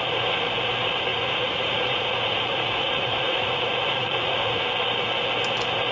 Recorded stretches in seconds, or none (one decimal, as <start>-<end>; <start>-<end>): 0.0-1.1; 4.6-5.9